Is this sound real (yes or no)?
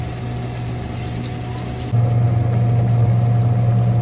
yes